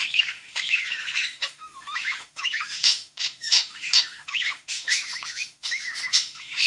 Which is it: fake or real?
fake